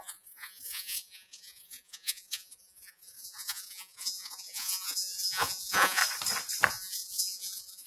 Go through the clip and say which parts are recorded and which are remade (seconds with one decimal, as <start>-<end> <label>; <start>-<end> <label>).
0.0-6.0 remade; 6.0-6.7 recorded; 6.7-7.9 remade